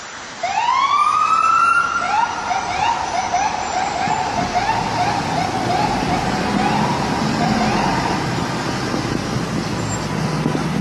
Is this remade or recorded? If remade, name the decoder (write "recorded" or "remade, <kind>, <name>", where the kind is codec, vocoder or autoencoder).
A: recorded